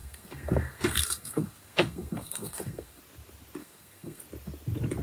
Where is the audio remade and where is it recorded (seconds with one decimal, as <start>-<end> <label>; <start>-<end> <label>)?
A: 0.0-3.0 remade; 3.0-3.6 recorded; 3.6-4.2 remade; 4.2-5.0 recorded